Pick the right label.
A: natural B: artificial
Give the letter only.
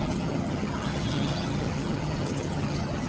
B